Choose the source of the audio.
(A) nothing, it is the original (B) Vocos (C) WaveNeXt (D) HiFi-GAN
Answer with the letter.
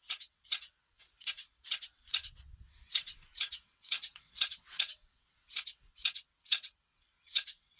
C